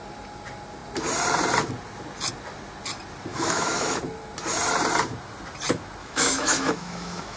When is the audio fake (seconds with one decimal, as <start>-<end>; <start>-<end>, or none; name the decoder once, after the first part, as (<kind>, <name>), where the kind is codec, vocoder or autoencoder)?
3.3-4.0 (autoencoder, DAC-VAE); 6.0-7.4